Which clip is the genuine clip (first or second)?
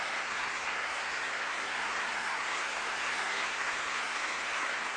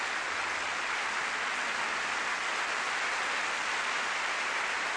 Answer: second